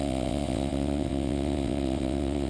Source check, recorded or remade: remade